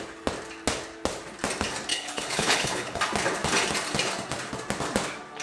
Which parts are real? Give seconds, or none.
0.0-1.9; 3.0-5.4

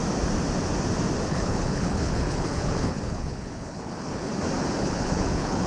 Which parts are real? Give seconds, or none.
0.0-1.3; 4.3-4.8

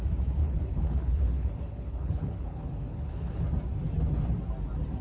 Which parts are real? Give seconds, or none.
0.0-0.4; 3.4-5.0

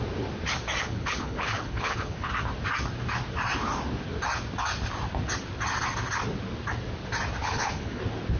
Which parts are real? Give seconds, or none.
0.0-0.8; 2.3-7.4; 8.0-8.4

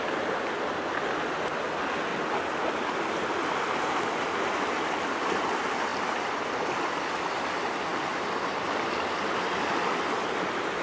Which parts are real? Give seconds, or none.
0.0-10.8